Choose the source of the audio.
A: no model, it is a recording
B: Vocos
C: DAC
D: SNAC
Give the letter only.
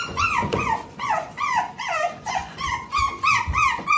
B